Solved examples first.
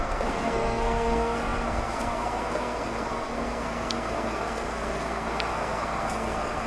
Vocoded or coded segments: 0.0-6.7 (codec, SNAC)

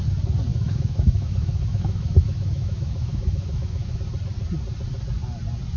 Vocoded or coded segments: 0.5-4.0 (autoencoder, DAC-VAE)